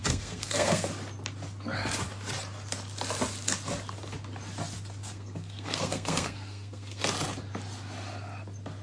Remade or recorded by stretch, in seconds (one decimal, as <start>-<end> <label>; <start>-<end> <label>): 0.0-0.9 remade; 0.9-5.0 recorded; 5.0-7.0 remade; 7.0-8.8 recorded